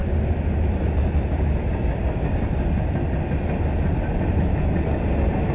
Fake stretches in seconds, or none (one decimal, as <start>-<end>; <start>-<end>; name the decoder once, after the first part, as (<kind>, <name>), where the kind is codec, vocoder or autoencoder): none